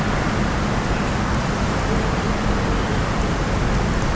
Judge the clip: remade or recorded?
recorded